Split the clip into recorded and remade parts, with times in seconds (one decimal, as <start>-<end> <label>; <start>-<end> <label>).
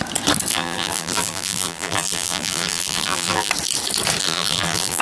0.0-0.5 recorded; 0.5-3.5 remade; 3.5-4.2 recorded; 4.2-5.0 remade